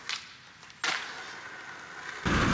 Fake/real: real